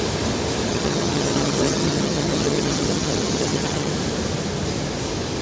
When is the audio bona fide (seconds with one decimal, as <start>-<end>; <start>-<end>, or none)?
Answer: 0.0-0.7; 3.9-5.4